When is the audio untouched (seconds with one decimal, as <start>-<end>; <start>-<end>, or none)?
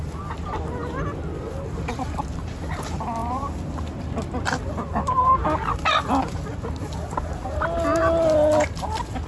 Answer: 0.0-9.3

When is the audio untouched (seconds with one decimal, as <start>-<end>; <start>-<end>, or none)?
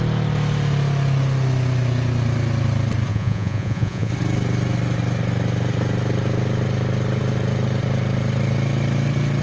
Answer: 0.0-3.1; 4.1-9.4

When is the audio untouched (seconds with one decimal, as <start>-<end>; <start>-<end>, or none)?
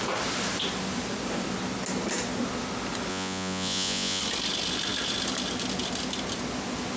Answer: 0.0-3.1; 4.2-7.0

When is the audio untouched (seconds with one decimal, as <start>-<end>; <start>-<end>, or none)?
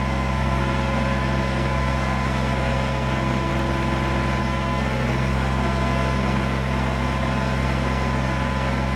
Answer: 3.5-4.4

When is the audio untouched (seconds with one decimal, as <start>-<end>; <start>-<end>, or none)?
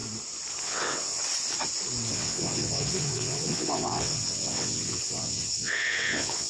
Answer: 0.0-0.6; 1.2-2.1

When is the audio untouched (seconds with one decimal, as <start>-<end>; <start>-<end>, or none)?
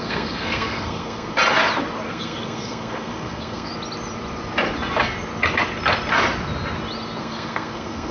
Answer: 1.3-2.1; 3.7-7.2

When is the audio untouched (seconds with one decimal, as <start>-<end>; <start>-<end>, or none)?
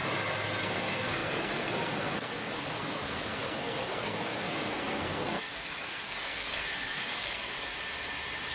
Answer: 0.0-0.6; 7.5-8.5